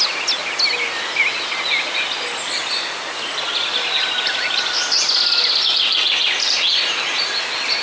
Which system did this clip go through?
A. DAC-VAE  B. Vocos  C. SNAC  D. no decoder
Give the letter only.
D